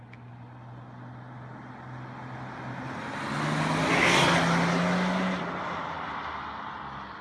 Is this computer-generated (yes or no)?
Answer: no